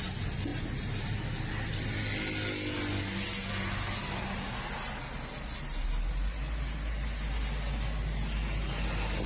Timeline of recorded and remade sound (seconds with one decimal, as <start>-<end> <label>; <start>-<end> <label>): 0.0-9.3 recorded